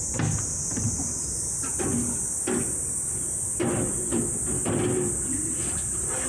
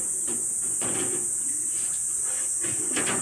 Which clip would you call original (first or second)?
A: first